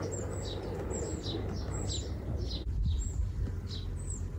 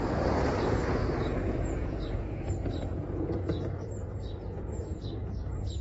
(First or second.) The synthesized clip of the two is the second